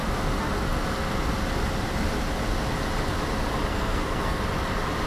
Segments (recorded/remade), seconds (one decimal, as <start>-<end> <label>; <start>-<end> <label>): 0.0-3.7 recorded; 3.7-4.4 remade; 4.4-5.1 recorded